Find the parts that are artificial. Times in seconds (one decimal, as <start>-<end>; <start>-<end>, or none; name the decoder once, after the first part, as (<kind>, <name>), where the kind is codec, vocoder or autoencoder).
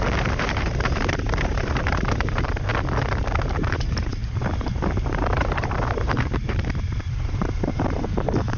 0.0-2.7 (vocoder, BigVGAN v2); 3.2-8.6